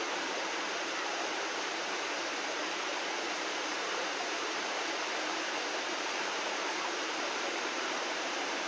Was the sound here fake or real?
fake